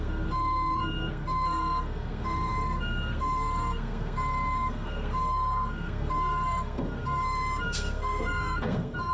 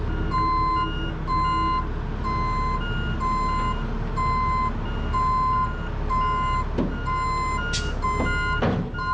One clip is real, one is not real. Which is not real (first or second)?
first